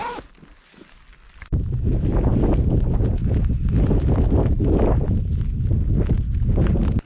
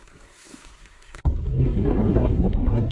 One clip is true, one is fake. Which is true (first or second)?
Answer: first